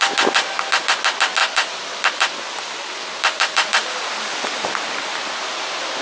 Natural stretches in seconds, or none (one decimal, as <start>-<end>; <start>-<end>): 0.0-1.4; 5.0-6.0